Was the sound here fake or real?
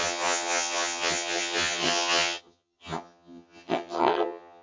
fake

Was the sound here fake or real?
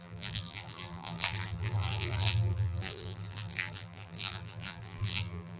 fake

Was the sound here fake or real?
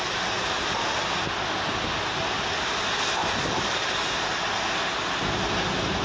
real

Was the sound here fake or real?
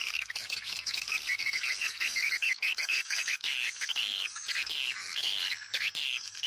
fake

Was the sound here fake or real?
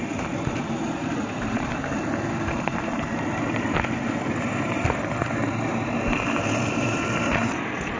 fake